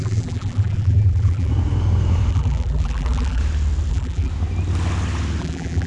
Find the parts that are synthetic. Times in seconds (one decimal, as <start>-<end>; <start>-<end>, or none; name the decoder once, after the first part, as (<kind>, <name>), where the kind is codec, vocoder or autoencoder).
0.0-1.5 (vocoder, BigVGAN v2); 2.3-3.4; 3.9-4.3; 5.4-5.9